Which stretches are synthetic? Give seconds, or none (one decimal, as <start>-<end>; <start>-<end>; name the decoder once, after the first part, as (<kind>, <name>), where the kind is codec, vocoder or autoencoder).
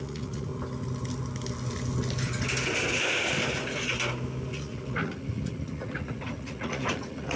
0.0-0.5 (vocoder, Vocos); 4.5-7.4